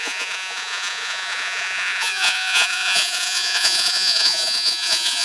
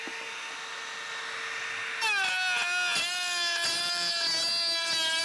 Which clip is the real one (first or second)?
second